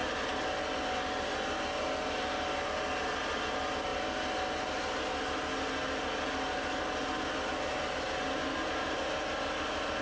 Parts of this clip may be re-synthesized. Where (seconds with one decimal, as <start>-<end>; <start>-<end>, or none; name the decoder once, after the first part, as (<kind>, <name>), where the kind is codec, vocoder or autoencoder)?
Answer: none